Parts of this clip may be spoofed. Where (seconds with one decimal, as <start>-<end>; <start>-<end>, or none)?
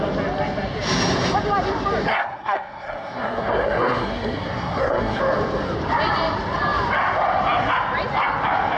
2.1-5.2